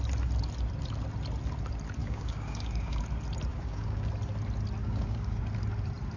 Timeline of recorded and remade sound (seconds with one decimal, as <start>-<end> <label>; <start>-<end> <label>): 0.0-2.0 recorded; 2.0-3.0 remade; 3.0-3.5 recorded; 3.5-4.1 remade; 4.1-4.8 recorded; 4.8-5.4 remade; 5.4-6.2 recorded